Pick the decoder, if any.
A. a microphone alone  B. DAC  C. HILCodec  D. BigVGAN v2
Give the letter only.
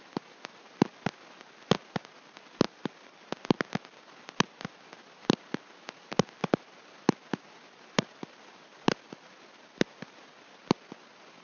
A